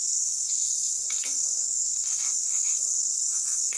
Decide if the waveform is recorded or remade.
remade